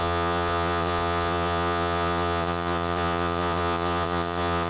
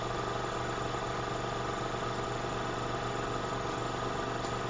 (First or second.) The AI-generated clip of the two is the first